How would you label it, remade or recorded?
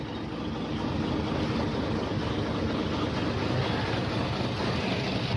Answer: recorded